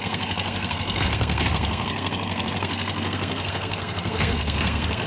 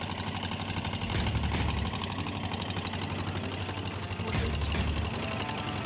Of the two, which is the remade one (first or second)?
first